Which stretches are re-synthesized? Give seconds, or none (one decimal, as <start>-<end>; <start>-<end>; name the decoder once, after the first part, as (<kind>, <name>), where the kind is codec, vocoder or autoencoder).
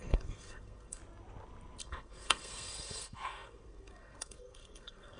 0.0-1.0 (codec, SNAC); 1.8-5.2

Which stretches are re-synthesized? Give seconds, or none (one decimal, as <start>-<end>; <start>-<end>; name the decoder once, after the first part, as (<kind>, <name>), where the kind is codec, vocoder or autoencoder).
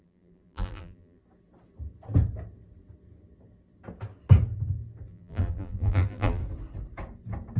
0.0-1.2 (vocoder, BigVGAN v2); 5.1-6.4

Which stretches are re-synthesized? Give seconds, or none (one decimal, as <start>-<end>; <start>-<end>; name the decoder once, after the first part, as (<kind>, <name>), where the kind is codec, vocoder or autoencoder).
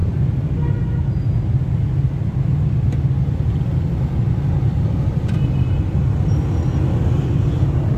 none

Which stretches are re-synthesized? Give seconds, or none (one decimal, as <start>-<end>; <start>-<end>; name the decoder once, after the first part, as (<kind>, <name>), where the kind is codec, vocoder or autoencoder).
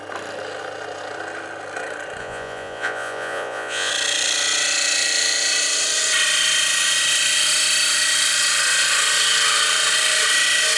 2.2-3.9 (vocoder, Vocos)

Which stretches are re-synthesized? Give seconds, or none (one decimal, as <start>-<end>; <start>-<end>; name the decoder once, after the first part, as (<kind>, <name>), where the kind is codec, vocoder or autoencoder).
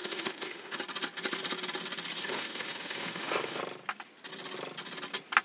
0.0-0.8 (autoencoder, DAC-VAE); 2.2-3.6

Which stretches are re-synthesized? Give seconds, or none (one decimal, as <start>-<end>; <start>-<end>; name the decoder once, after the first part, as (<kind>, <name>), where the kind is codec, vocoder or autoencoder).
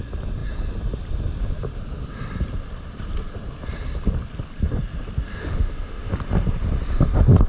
5.4-6.1 (autoencoder, DAC-VAE)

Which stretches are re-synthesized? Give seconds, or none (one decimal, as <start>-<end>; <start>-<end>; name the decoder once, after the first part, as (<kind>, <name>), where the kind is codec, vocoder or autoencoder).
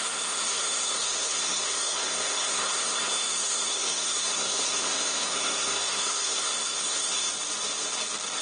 0.0-7.3 (codec, SNAC)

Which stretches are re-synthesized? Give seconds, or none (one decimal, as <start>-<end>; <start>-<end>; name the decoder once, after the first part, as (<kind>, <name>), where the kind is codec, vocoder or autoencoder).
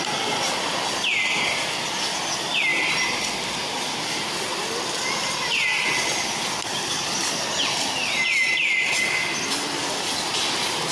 none